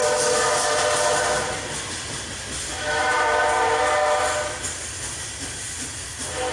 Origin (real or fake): real